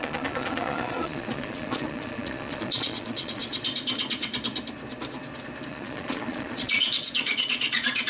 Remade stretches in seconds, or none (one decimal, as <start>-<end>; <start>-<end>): 0.0-3.4; 5.7-8.1